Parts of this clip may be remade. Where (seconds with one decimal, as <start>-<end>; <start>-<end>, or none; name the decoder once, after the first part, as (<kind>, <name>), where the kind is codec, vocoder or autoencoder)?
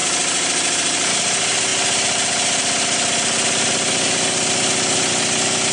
none